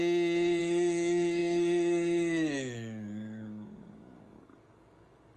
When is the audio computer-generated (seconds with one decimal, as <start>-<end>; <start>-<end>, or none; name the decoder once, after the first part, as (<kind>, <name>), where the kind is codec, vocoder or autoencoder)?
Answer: 0.6-5.4 (codec, DAC)